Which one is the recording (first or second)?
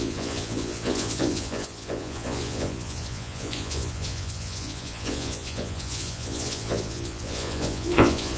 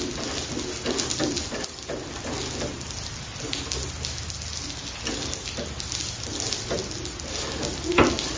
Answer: second